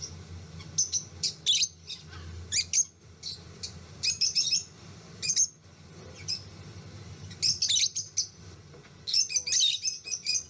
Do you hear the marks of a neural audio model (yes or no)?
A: no